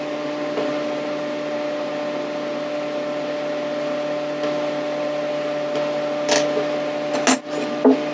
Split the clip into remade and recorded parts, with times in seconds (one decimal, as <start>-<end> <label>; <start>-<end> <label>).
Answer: 0.0-8.1 recorded